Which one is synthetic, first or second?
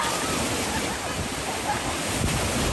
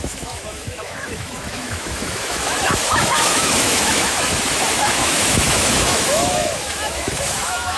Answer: second